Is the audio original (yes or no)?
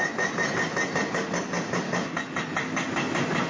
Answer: yes